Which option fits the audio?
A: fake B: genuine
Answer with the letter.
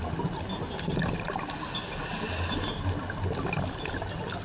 B